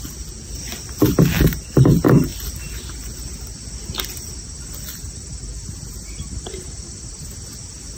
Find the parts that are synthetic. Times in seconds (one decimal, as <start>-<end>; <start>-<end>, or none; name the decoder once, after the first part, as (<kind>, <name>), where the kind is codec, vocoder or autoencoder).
none